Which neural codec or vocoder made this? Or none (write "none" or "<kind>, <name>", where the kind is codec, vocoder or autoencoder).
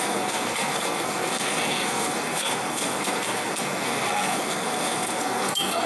codec, SNAC